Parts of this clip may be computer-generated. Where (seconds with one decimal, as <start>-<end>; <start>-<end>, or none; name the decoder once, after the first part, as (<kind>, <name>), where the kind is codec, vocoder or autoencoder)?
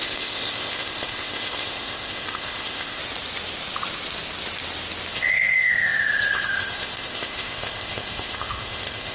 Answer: 0.0-3.0 (codec, ZipCodec); 5.1-9.1